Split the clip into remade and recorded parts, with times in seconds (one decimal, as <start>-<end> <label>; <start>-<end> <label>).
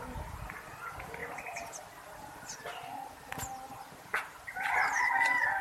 0.0-5.6 recorded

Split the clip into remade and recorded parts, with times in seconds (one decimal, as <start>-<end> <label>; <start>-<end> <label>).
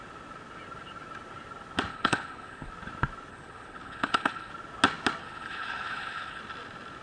0.0-1.9 recorded; 1.9-2.7 remade; 2.7-3.3 recorded; 3.3-4.5 remade; 4.5-5.2 recorded; 5.2-6.4 remade; 6.4-7.0 recorded